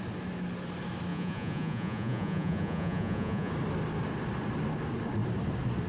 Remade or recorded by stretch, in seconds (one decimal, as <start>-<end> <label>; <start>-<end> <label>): 0.0-1.1 recorded; 1.1-3.5 remade; 3.5-5.9 recorded